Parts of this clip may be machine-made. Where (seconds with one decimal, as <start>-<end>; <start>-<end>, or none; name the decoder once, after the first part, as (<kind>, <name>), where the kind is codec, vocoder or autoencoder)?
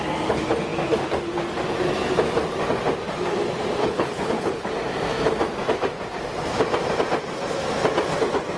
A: 3.8-4.7 (codec, HILCodec)